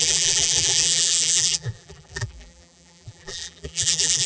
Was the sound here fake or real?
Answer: fake